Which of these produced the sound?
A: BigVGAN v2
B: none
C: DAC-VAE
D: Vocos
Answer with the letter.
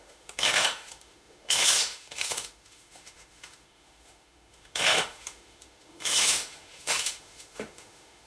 C